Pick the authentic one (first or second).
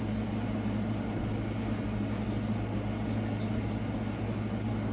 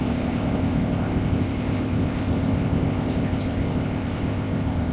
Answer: first